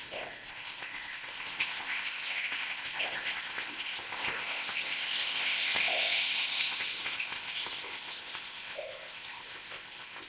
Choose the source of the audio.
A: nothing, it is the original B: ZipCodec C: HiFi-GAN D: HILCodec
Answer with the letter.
B